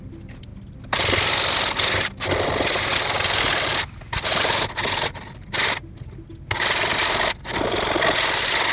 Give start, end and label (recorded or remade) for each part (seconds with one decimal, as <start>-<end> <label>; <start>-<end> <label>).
0.0-8.7 recorded